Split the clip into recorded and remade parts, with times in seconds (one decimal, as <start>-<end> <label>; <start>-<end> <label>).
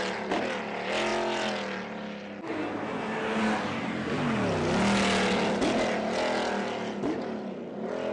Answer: 0.0-8.1 recorded